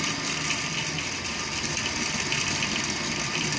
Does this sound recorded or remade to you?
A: remade